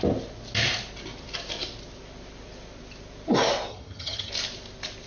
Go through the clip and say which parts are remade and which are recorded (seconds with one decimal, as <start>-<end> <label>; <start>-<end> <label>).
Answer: 0.0-3.7 recorded; 3.7-4.3 remade; 4.3-5.1 recorded